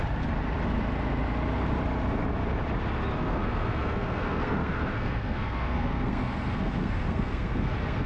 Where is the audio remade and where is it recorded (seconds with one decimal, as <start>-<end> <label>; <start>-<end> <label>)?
0.0-3.3 recorded; 3.3-8.1 remade